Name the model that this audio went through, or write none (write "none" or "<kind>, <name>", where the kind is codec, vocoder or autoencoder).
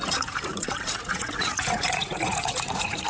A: vocoder, Vocos